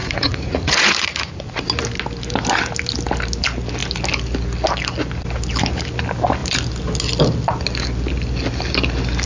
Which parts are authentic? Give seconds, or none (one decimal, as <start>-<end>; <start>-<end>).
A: 1.6-9.3